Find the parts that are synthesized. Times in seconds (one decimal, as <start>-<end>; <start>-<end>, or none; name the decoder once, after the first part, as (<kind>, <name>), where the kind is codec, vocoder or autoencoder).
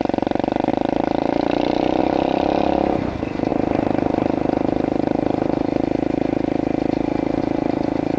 none